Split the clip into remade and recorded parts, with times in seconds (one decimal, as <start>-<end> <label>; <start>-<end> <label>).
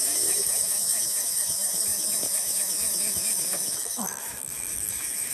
0.0-5.3 remade